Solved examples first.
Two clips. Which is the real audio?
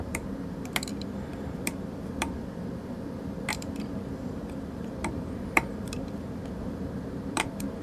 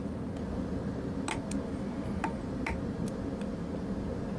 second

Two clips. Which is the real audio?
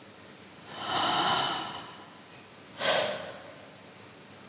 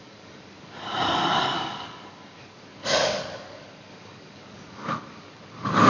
first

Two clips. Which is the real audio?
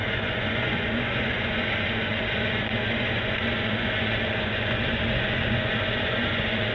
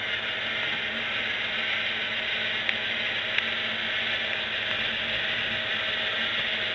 second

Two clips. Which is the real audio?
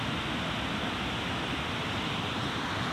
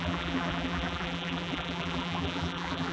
first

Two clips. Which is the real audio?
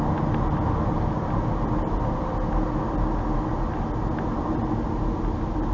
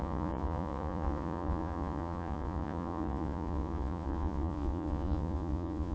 first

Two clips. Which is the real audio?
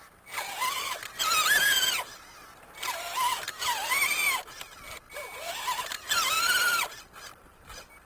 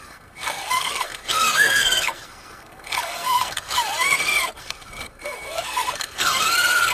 first